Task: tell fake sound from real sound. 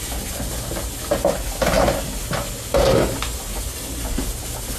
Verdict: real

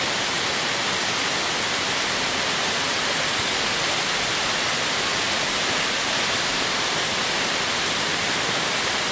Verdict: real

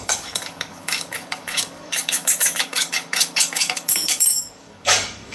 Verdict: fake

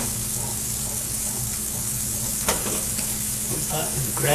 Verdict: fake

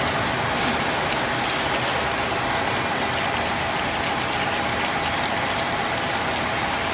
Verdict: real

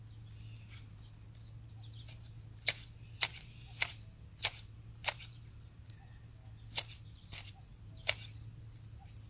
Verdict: real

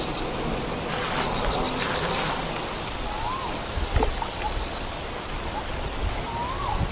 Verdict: real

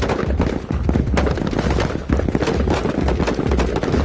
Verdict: real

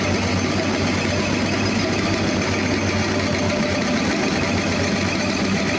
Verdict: real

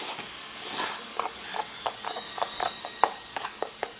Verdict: fake